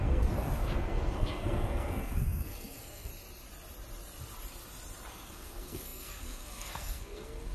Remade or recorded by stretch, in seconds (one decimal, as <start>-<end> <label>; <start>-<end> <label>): 0.0-3.1 remade; 3.1-5.1 recorded; 5.1-7.5 remade